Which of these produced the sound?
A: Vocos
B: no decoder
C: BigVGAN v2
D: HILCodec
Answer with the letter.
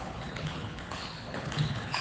D